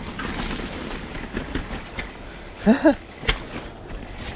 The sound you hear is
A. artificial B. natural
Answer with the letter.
B